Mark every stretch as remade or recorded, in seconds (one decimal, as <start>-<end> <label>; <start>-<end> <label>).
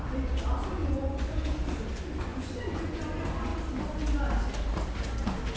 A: 0.0-0.8 recorded; 0.8-1.4 remade; 1.4-2.3 recorded; 2.3-3.0 remade; 3.0-5.6 recorded